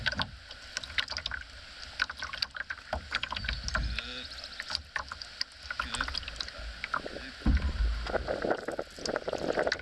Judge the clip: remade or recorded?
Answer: recorded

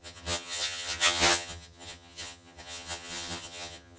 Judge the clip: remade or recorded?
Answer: remade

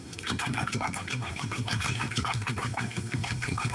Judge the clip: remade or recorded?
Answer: remade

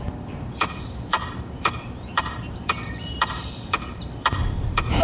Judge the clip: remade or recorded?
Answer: remade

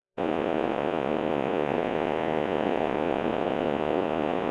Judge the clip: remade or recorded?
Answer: remade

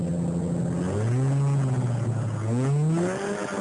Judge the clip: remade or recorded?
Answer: recorded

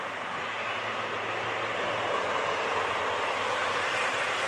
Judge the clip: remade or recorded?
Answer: recorded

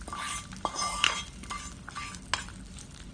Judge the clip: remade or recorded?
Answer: recorded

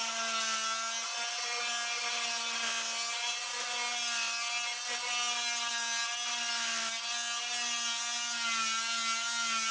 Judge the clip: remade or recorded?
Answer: recorded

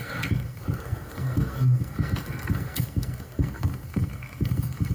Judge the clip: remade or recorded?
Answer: remade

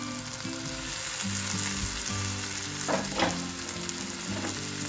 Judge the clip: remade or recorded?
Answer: recorded